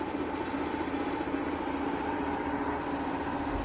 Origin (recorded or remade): remade